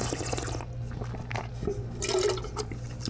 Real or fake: real